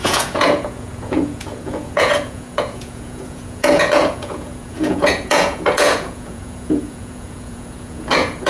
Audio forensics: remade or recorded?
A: remade